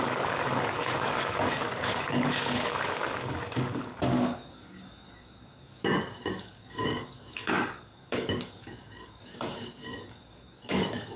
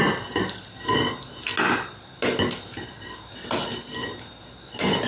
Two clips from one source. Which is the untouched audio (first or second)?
second